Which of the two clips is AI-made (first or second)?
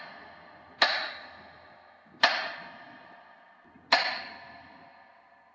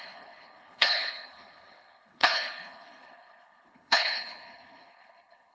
second